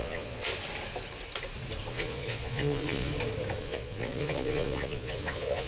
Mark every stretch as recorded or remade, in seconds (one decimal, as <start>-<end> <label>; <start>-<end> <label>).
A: 0.0-0.5 remade; 0.5-1.9 recorded; 1.9-3.1 remade; 3.1-3.6 recorded; 3.6-5.7 remade